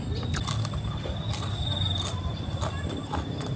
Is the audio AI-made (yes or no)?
no